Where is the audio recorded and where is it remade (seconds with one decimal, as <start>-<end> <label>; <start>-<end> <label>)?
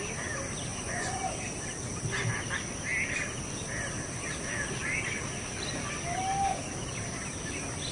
0.0-0.7 recorded; 0.7-1.2 remade; 1.2-7.9 recorded